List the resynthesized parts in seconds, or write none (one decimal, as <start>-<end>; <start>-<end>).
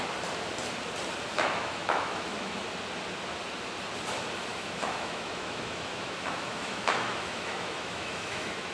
1.3-2.6; 4.5-8.7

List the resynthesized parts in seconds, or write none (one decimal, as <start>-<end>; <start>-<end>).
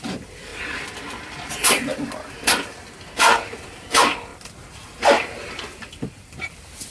none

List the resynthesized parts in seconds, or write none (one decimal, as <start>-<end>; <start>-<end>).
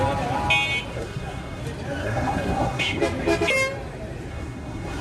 0.9-1.6; 2.0-3.0; 4.3-5.0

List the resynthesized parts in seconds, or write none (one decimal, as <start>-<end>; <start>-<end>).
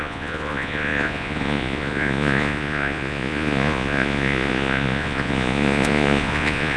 0.0-6.8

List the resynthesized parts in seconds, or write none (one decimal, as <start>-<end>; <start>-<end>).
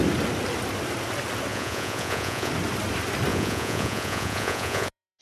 1.5-2.5; 3.3-5.2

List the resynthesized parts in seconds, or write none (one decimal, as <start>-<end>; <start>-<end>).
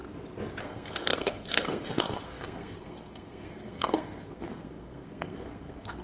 0.6-6.0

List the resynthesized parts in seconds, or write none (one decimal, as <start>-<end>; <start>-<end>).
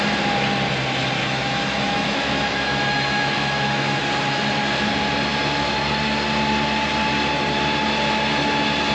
1.2-4.0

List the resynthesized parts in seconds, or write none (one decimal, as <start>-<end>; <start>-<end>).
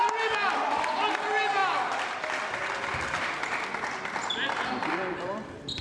none